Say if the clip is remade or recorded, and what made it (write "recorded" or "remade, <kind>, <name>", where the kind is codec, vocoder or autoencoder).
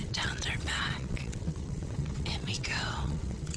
remade, vocoder, WaveNeXt